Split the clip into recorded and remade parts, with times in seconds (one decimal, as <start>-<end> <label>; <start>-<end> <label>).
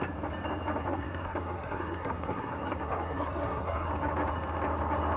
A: 0.0-0.8 recorded; 0.8-3.9 remade; 3.9-5.2 recorded